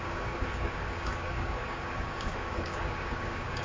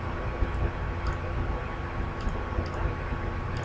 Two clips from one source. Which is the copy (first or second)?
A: first